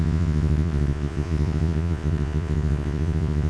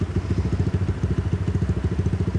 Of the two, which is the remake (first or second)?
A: first